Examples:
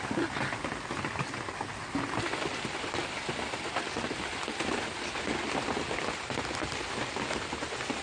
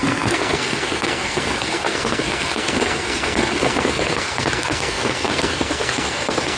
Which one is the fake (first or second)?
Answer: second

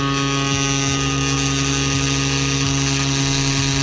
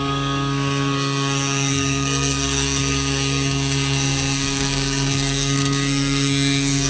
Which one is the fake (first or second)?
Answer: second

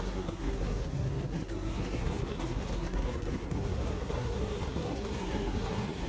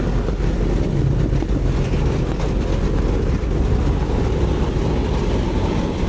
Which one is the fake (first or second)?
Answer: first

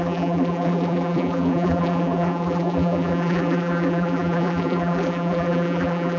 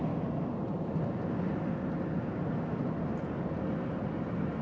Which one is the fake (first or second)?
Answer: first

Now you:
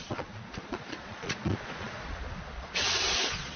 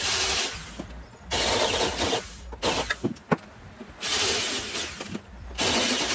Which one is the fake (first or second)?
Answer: first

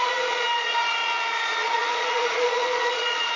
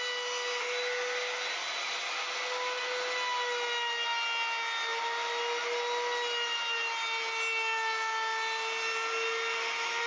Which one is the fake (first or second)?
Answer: first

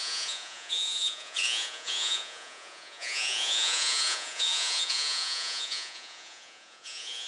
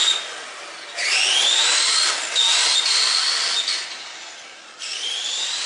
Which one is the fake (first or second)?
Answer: first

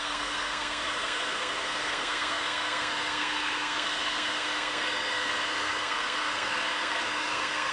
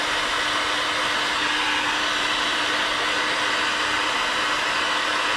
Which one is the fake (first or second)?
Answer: first